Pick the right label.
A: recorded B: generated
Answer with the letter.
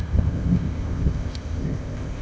B